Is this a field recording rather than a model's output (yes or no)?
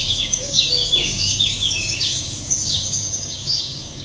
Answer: no